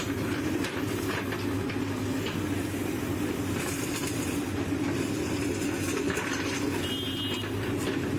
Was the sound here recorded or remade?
recorded